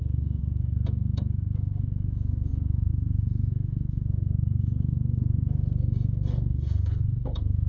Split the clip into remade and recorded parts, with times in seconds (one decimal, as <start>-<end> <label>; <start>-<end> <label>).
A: 0.0-7.7 remade